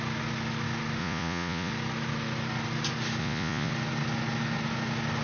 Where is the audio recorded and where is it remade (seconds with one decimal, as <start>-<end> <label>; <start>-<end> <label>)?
0.0-1.0 recorded; 1.0-1.7 remade; 1.7-3.2 recorded; 3.2-3.7 remade; 3.7-5.2 recorded